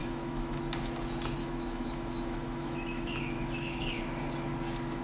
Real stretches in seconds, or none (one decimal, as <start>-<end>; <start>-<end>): 0.6-1.4; 4.0-5.0